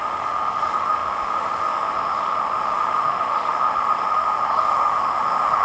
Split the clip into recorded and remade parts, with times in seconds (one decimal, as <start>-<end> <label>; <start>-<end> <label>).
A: 0.0-5.6 remade